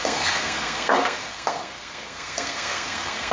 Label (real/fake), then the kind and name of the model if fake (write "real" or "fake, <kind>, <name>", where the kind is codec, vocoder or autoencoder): fake, codec, SNAC